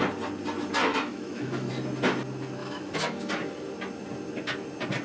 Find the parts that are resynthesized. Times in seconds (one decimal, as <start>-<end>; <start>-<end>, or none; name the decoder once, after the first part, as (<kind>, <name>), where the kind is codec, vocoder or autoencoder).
0.9-1.7 (autoencoder, DAC-VAE); 2.6-3.3